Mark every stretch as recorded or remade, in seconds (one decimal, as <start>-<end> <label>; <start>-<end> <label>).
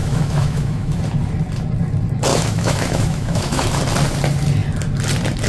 0.0-1.0 remade; 1.0-2.3 recorded; 2.3-3.8 remade; 3.8-5.5 recorded